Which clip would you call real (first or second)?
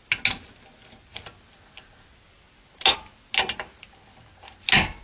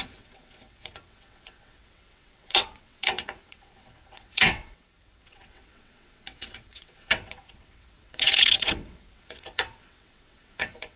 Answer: first